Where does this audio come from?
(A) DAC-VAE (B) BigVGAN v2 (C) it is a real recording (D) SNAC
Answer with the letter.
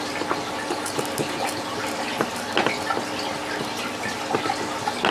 C